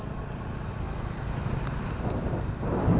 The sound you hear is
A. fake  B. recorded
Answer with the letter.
B